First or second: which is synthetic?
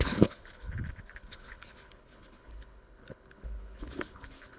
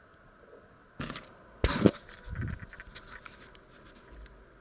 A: first